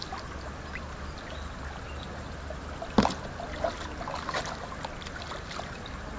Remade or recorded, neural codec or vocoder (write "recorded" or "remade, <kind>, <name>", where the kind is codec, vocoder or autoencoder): recorded